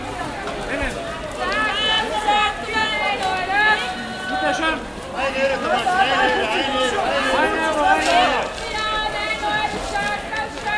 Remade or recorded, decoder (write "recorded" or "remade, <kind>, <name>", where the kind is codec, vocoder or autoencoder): recorded